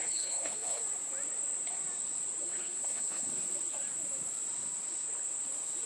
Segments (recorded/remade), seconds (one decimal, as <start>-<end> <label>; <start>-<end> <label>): 0.0-0.8 remade; 0.8-2.4 recorded; 2.4-3.3 remade; 3.3-5.9 recorded